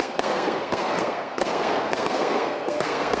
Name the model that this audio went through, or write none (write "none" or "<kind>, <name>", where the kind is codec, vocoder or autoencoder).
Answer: codec, SNAC